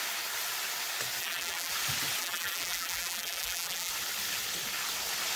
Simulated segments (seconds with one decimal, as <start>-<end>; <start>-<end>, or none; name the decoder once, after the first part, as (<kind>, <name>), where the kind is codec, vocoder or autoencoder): 1.2-1.7 (vocoder, BigVGAN v2); 2.2-3.9